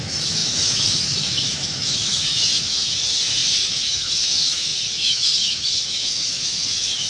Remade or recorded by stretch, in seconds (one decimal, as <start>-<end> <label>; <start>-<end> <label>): 0.0-7.1 remade